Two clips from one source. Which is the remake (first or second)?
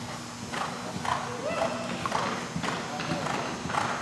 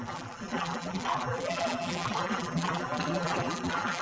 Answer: second